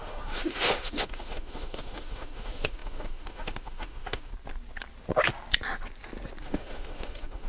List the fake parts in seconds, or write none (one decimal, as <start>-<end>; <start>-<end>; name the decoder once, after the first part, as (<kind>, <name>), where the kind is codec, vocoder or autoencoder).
0.0-4.3 (autoencoder, DAC-VAE); 6.4-7.5